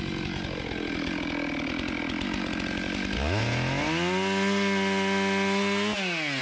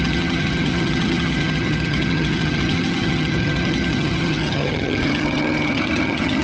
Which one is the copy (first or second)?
second